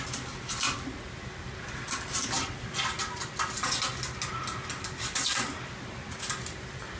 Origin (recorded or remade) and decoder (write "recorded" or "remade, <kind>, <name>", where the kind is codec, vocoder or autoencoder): recorded